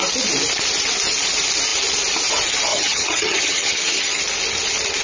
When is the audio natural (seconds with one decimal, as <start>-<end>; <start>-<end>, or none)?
0.0-2.7; 4.2-5.0